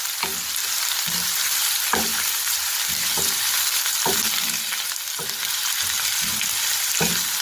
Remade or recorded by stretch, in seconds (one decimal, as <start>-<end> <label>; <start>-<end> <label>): 0.0-7.4 recorded